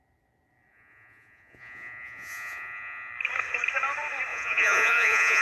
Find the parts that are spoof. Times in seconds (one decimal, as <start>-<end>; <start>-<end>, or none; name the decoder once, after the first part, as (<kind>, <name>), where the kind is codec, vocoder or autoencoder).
0.7-3.1 (vocoder, Vocos); 4.3-5.4